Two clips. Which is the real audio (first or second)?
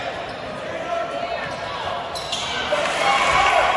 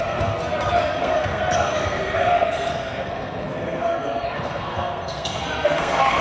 first